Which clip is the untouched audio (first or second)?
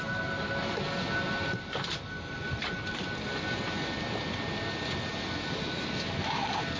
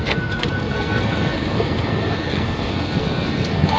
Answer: first